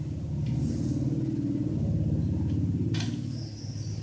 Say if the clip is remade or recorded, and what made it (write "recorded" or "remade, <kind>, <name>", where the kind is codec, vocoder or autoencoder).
recorded